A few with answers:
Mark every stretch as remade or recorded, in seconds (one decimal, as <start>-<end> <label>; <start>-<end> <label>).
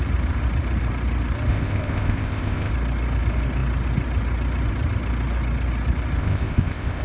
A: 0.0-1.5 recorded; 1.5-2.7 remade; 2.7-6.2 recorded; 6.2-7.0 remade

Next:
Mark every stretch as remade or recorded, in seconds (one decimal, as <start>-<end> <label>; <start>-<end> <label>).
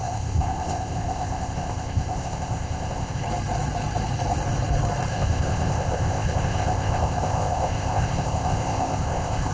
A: 0.0-3.2 remade; 3.2-5.1 recorded; 5.1-9.5 remade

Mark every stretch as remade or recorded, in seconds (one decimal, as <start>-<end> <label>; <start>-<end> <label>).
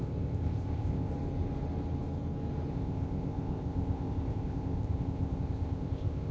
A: 0.0-1.1 remade; 1.1-2.7 recorded; 2.7-6.3 remade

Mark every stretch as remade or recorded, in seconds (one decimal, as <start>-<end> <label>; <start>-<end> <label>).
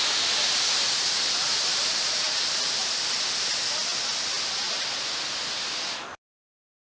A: 0.0-7.0 recorded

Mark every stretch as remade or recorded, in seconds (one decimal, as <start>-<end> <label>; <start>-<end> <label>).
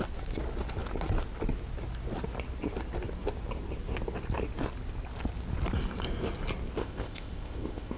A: 0.0-6.8 recorded; 6.8-8.0 remade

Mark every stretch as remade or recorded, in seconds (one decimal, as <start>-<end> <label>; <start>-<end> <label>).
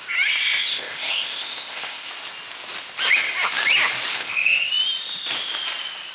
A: 0.0-0.7 recorded; 0.7-2.1 remade; 2.1-4.1 recorded; 4.1-4.7 remade; 4.7-6.1 recorded